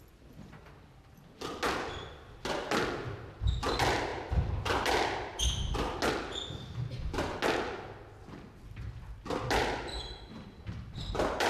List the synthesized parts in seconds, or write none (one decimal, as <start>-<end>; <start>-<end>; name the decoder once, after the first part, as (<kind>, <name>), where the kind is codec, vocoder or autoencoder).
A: 10.3-11.5 (vocoder, BigVGAN v2)